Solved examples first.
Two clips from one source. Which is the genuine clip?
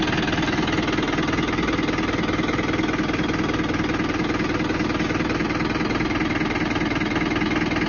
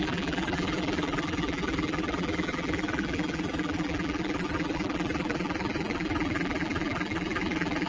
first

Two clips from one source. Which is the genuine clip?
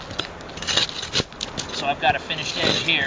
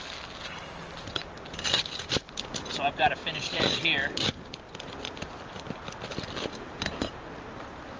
first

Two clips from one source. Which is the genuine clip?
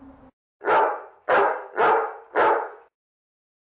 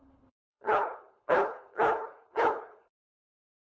first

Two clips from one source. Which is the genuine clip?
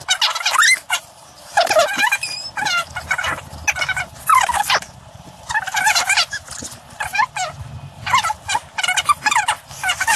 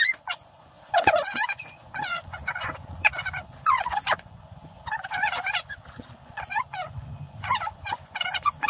first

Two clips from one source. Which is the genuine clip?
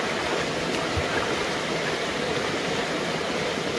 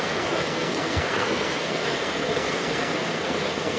first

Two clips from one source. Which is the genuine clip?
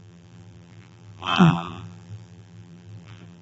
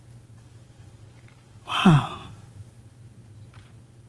second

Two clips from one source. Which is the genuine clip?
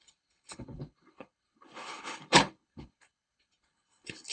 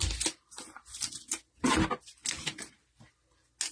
second